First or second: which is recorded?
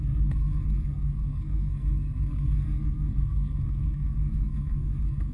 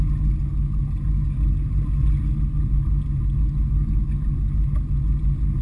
second